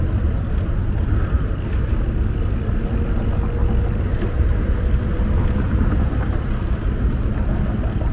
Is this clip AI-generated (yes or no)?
no